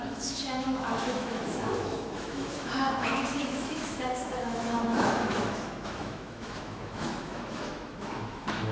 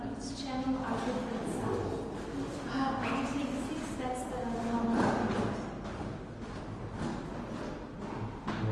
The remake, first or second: first